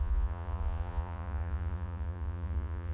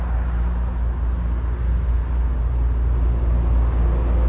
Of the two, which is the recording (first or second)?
second